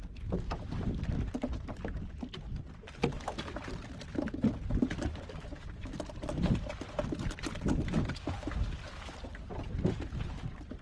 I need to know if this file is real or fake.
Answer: real